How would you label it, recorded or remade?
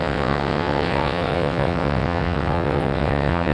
remade